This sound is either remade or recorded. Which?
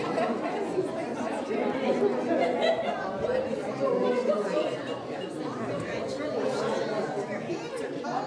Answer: recorded